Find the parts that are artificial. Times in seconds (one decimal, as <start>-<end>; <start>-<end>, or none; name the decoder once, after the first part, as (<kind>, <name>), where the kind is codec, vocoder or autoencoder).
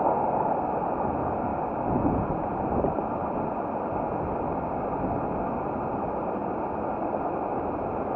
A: none